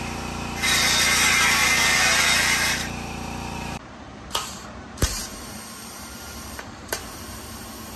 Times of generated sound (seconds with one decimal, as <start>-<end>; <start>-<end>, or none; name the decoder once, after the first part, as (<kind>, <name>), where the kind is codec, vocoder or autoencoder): 0.0-7.0 (vocoder, BigVGAN v2)